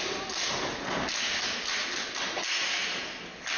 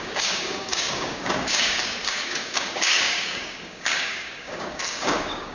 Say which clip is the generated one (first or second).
second